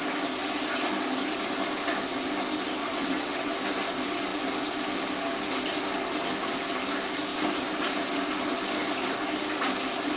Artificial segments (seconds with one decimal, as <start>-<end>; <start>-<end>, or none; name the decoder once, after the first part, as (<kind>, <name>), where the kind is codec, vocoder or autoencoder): 2.8-3.5 (vocoder, WaveNeXt)